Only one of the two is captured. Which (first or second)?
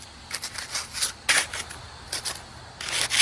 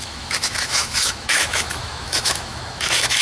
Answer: first